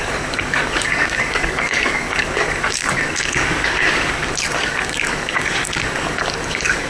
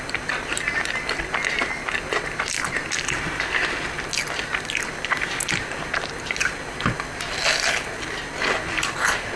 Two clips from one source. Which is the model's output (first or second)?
first